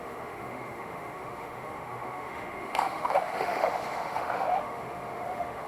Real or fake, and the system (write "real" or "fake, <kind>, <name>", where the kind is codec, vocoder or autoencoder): fake, autoencoder, DAC-VAE